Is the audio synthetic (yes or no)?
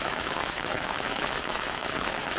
yes